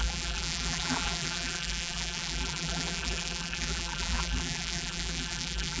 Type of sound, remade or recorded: remade